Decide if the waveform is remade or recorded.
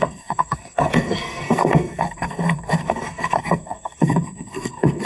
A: remade